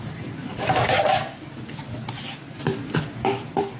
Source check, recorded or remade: remade